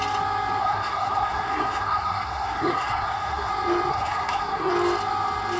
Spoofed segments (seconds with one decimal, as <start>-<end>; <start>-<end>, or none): 0.6-3.5; 3.9-4.7